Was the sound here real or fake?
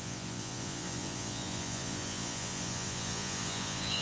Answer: fake